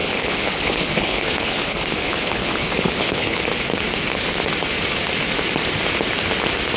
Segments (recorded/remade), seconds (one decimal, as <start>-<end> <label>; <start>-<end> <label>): 0.0-3.4 remade; 3.4-6.8 recorded